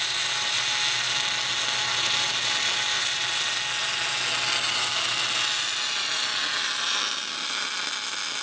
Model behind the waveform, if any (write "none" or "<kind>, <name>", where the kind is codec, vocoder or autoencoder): none